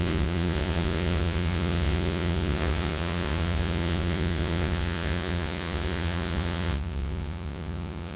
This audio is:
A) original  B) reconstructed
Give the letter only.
B